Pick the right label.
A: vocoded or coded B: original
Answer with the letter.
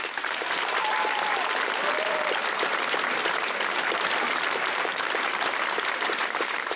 A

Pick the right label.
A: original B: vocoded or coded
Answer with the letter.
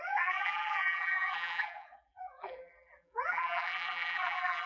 B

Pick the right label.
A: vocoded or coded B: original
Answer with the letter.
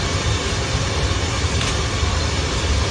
A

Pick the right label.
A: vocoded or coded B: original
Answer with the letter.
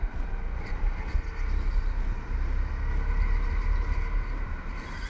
B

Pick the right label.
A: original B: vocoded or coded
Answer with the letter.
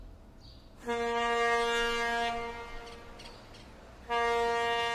A